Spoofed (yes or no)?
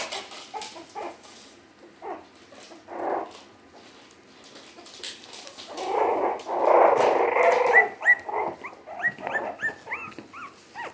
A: no